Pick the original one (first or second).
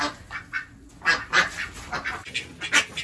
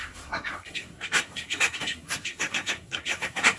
first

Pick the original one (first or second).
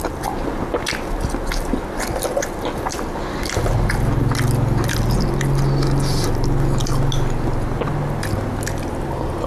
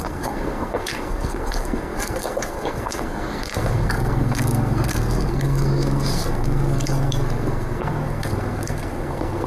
first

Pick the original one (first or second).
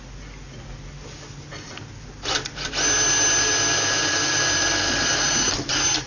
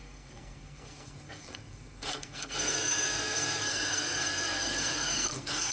first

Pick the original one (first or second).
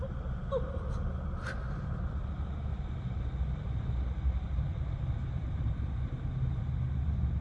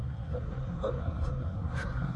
first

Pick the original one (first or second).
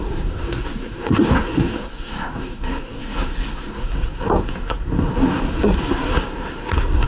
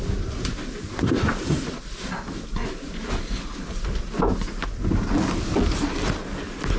second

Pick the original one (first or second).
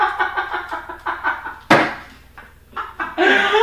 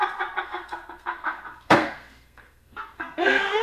first